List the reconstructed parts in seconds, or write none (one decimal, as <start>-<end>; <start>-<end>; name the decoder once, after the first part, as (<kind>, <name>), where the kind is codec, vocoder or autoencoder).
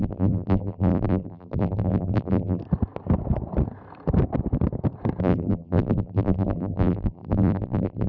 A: 0.0-2.6 (vocoder, BigVGAN v2); 5.2-8.1